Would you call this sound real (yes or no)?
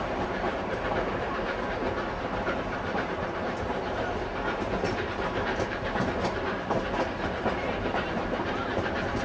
no